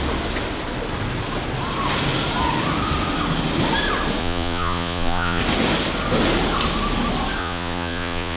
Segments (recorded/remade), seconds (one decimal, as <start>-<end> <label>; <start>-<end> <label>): 0.0-4.2 recorded; 4.2-5.4 remade; 5.4-7.4 recorded; 7.4-8.4 remade